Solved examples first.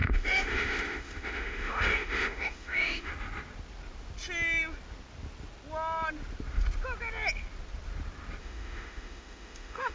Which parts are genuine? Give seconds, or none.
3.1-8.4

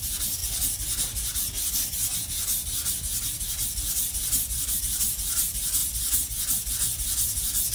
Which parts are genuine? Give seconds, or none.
0.4-4.8; 5.8-6.7

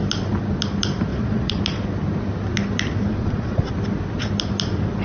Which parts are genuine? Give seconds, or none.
0.0-1.1; 1.6-3.1; 3.7-5.0

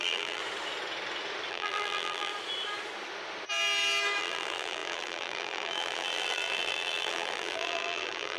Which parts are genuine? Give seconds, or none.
0.4-1.5; 2.3-4.2